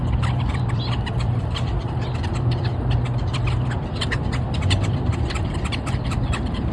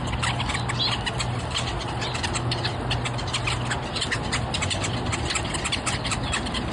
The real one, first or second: second